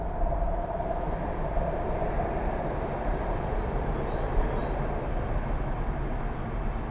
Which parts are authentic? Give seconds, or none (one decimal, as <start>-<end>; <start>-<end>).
0.0-6.9